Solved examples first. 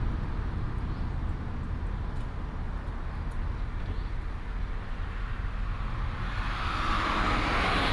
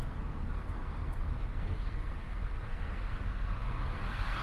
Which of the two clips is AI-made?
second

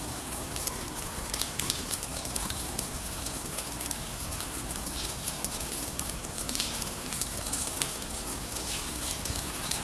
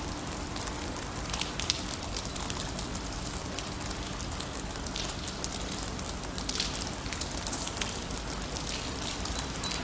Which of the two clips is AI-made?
first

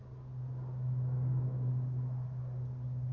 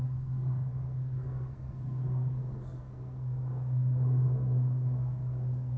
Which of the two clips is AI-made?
second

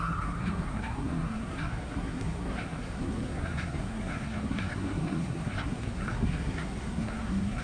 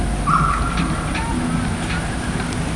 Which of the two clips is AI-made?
first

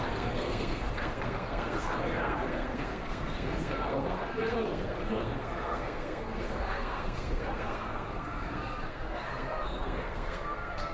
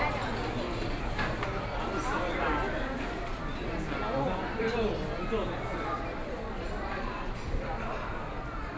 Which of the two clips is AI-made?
first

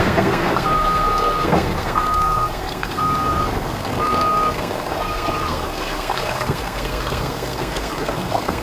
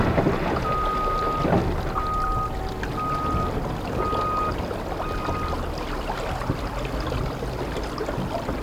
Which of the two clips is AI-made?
first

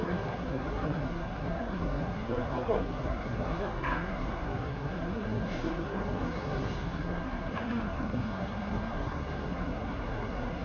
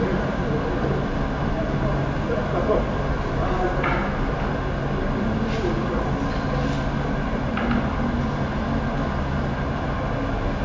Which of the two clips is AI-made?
first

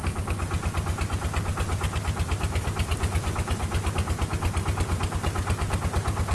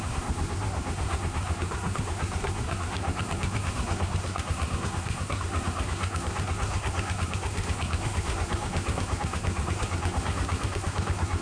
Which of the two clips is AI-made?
second